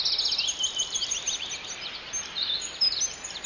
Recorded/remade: recorded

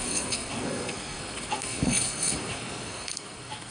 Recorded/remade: remade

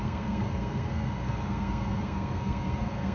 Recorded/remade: remade